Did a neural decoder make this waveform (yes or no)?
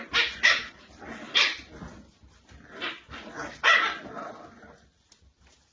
no